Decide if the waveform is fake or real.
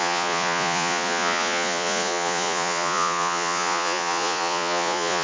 fake